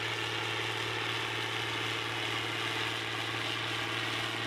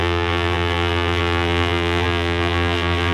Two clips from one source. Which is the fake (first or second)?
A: second